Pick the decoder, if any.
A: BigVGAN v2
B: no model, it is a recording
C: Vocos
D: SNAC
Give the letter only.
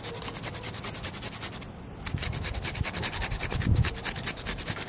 B